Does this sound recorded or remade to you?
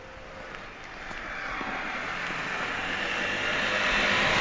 recorded